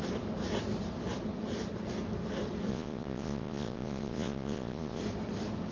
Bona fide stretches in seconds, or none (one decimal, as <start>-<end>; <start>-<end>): 0.0-2.7; 5.0-5.7